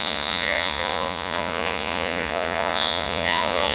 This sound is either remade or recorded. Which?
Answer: remade